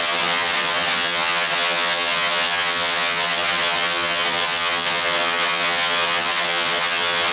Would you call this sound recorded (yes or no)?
no